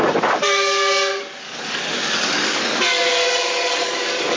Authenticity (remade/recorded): remade